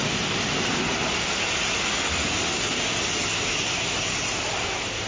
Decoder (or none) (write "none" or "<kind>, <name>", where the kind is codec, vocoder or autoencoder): none